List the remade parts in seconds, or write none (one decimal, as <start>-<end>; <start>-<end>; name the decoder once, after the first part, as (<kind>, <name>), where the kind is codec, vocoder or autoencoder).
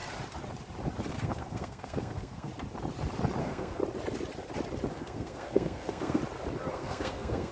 1.1-2.5 (codec, SNAC); 3.4-3.8; 4.9-6.2; 6.7-7.5